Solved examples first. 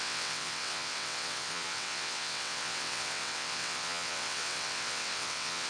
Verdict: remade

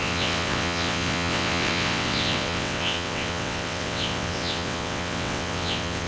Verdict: remade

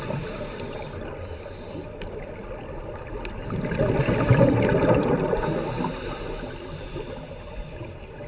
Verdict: recorded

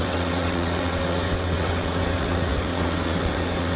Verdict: remade